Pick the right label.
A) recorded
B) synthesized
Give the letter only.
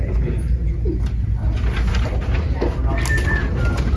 A